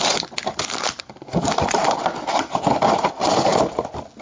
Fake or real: real